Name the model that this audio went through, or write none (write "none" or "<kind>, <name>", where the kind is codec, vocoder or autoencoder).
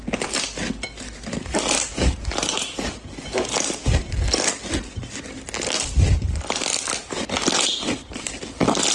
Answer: none